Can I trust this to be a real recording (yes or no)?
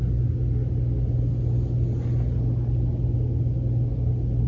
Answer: yes